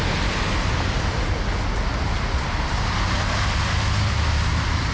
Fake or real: real